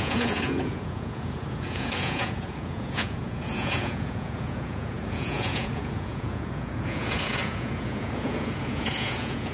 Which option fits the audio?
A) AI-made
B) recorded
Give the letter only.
A